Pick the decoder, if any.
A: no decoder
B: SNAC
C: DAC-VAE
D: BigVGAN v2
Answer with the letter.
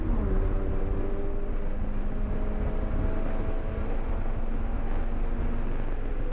A